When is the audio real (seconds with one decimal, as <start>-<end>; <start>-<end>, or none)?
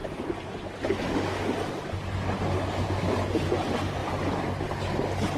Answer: 0.0-5.4